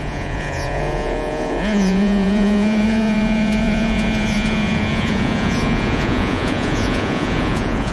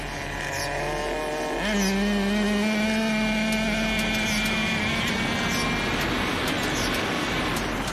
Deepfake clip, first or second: first